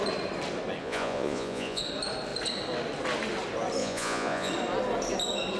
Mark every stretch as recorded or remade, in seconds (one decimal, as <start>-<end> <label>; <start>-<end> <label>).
0.0-0.8 recorded; 0.8-1.8 remade; 1.8-3.8 recorded; 3.8-4.5 remade; 4.5-5.6 recorded